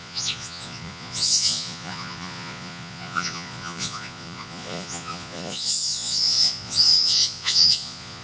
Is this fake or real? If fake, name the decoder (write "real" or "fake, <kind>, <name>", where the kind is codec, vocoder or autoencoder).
fake, vocoder, Vocos